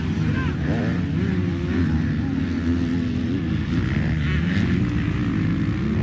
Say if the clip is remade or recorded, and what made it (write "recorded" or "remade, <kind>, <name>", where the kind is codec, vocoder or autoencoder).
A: recorded